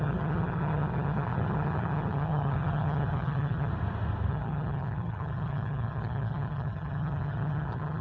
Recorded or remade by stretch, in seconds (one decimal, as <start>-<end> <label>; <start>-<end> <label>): 0.0-3.7 remade; 3.7-4.3 recorded; 4.3-8.0 remade